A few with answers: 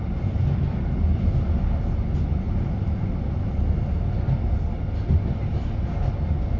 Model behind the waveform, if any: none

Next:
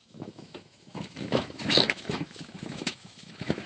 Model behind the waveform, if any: autoencoder, DAC-VAE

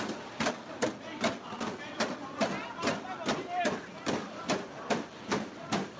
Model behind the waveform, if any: none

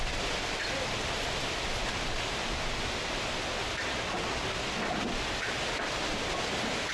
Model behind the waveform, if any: none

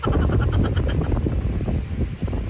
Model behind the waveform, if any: none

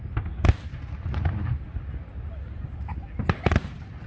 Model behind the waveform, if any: none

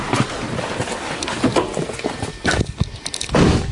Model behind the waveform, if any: none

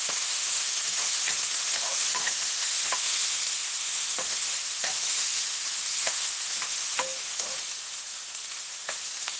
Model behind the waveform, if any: autoencoder, DAC-VAE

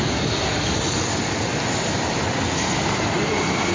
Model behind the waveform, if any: none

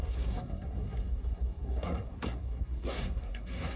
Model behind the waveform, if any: codec, SNAC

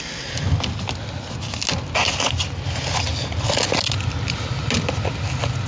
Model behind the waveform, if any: none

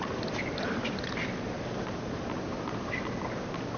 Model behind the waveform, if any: none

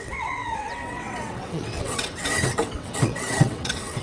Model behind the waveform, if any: vocoder, WaveNeXt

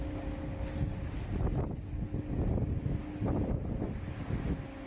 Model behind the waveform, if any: none